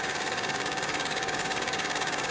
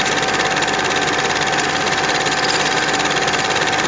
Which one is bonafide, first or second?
second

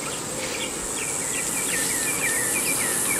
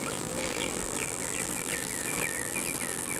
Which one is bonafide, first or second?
first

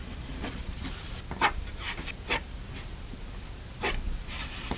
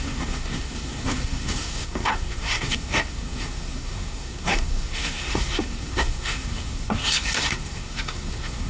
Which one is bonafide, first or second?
first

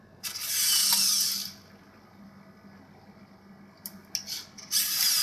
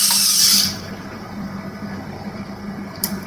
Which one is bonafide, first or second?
first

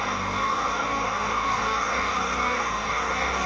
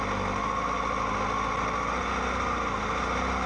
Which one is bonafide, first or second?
second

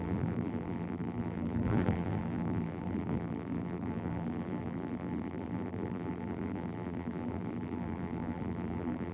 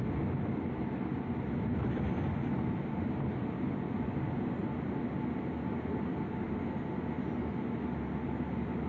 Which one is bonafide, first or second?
second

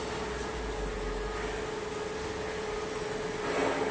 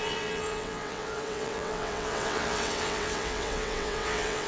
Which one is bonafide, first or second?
first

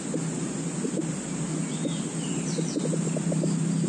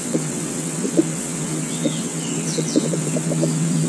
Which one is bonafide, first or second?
first